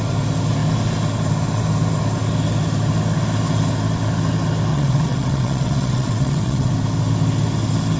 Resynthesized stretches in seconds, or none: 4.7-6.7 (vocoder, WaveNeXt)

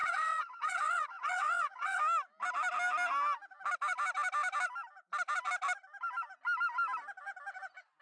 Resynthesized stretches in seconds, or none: 0.0-2.0 (vocoder, WaveNeXt)

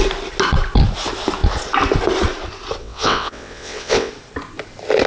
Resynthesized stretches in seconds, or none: 2.8-4.1 (vocoder, WaveNeXt)

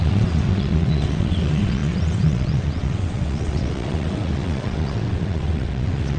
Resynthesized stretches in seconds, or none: 0.0-6.2 (vocoder, WaveNeXt)

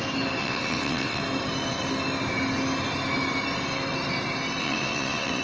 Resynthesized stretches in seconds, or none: 0.4-1.2 (vocoder, WaveNeXt); 4.6-5.4

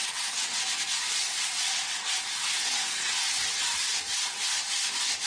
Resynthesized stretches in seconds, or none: 0.0-0.6 (vocoder, WaveNeXt); 1.2-4.4

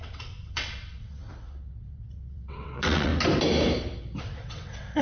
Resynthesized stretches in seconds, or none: 0.0-3.1 (vocoder, WaveNeXt); 4.2-5.0

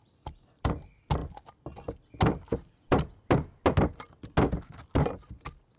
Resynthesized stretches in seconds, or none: none